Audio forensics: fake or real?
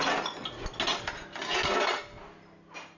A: real